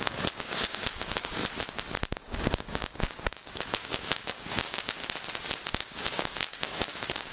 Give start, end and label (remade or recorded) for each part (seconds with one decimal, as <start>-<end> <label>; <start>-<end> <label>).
0.0-1.4 remade; 1.4-2.1 recorded; 2.1-5.0 remade; 5.0-5.7 recorded; 5.7-7.3 remade